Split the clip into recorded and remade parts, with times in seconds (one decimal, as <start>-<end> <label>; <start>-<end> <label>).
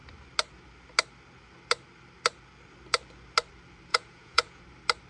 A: 0.0-3.9 recorded; 3.9-4.6 remade; 4.6-5.1 recorded